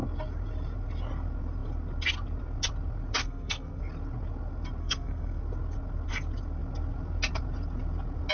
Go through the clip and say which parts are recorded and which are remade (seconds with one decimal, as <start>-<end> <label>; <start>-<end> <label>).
0.0-3.2 recorded; 3.2-3.8 remade; 3.8-4.8 recorded; 4.8-5.4 remade; 5.4-8.3 recorded